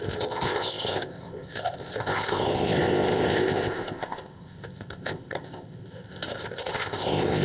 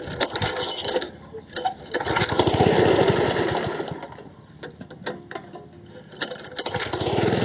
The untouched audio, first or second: second